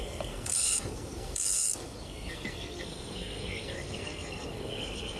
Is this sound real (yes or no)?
no